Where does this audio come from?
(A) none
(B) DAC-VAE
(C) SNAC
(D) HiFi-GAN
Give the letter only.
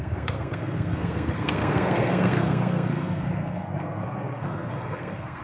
C